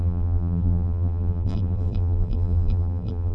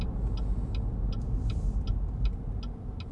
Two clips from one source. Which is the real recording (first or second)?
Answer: second